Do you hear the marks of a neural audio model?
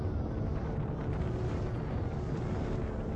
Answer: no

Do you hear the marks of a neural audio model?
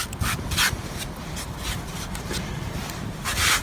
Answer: no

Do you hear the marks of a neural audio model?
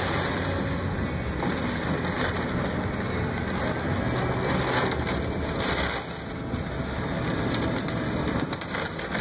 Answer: no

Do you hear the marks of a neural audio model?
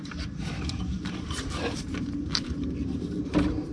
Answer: yes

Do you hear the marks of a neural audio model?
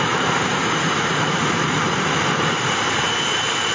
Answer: yes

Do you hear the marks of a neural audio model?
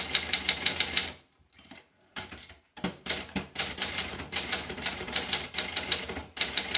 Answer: yes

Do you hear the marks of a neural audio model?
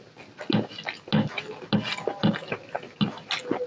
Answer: no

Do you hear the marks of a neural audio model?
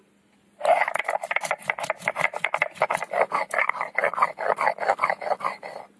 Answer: no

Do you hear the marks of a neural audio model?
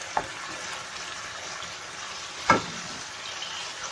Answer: yes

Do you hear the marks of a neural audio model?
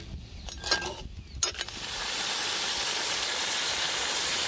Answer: no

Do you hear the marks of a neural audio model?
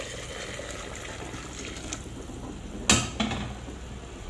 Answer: no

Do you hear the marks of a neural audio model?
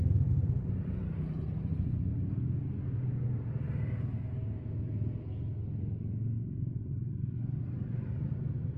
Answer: no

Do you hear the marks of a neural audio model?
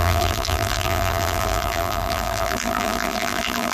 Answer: yes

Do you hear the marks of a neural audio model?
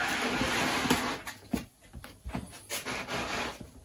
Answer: no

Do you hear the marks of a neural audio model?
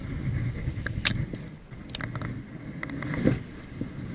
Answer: no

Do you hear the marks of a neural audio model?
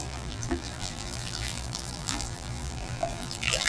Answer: yes